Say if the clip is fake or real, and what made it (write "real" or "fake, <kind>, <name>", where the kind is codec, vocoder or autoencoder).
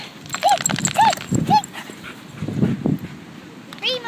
real